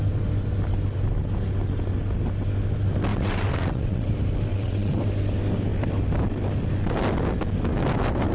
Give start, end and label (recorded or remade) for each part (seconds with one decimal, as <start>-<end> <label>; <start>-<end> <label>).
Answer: 0.0-3.1 recorded; 3.1-4.1 remade; 4.1-4.5 recorded; 4.5-5.0 remade; 5.0-8.3 recorded

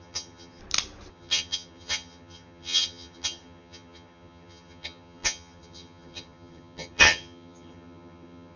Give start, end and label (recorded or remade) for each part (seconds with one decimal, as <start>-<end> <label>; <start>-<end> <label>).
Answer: 0.0-0.6 remade; 0.6-1.1 recorded; 1.1-8.6 remade

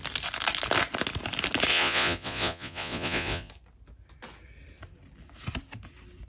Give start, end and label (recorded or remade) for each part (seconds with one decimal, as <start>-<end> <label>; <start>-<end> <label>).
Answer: 0.0-1.7 recorded; 1.7-3.5 remade; 3.5-6.3 recorded

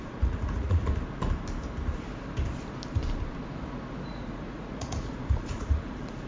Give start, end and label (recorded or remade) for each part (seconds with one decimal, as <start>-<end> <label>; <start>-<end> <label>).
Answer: 0.0-0.8 remade; 0.8-4.1 recorded; 4.1-6.3 remade

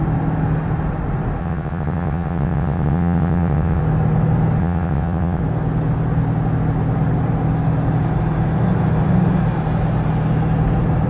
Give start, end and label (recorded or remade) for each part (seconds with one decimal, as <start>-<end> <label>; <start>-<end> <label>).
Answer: 0.0-1.4 recorded; 1.4-3.8 remade; 3.8-4.6 recorded; 4.6-5.4 remade; 5.4-11.1 recorded

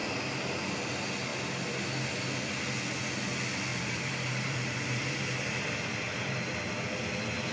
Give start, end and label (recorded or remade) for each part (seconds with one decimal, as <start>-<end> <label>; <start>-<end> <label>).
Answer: 0.0-0.7 remade; 0.7-3.7 recorded; 3.7-6.3 remade; 6.3-7.5 recorded

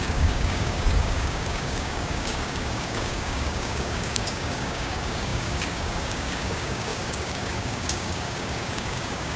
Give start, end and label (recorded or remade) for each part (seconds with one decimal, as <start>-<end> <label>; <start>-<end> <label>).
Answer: 0.0-9.4 remade